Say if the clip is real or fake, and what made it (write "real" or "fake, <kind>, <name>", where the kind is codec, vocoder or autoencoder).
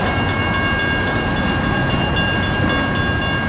real